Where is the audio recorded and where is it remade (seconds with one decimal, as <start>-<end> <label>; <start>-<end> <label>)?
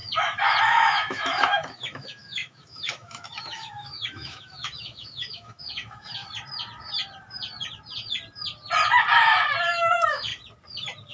0.0-0.6 recorded; 0.6-6.2 remade; 6.2-9.6 recorded; 9.6-10.3 remade; 10.3-11.1 recorded